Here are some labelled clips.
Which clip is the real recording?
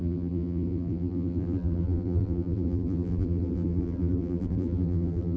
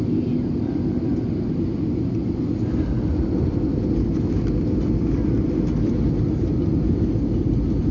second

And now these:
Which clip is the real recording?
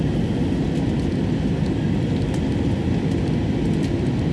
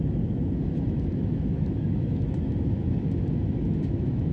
first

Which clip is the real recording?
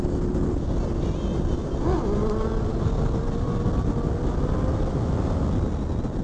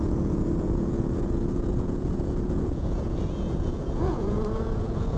first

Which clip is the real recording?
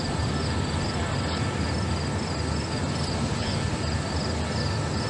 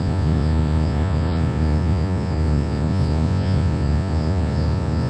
first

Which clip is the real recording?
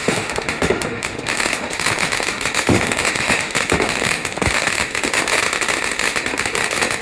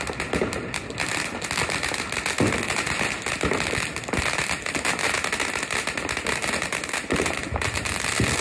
second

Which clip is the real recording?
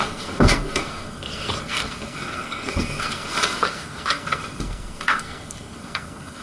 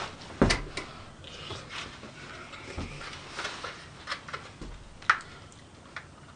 second